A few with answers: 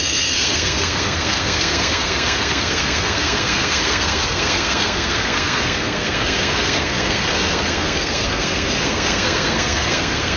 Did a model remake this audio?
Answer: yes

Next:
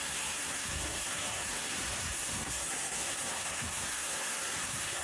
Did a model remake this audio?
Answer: yes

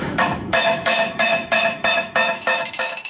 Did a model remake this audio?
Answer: yes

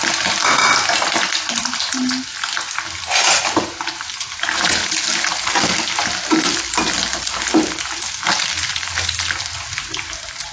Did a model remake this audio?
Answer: no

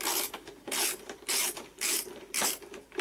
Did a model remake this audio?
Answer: yes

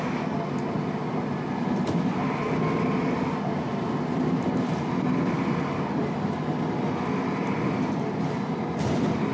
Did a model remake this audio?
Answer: no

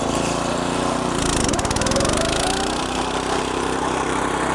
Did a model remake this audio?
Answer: yes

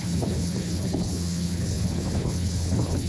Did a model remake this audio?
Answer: yes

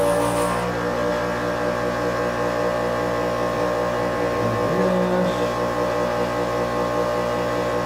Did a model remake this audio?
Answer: no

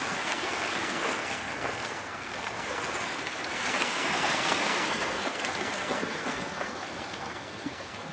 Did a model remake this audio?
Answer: yes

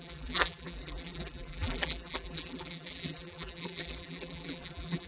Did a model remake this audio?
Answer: yes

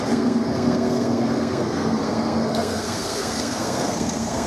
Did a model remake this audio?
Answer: yes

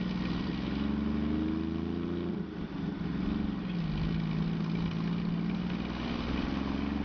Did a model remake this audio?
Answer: no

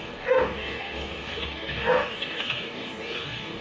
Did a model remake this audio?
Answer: yes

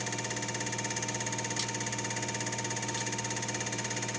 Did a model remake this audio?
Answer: no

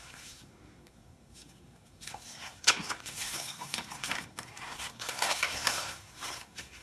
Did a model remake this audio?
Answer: yes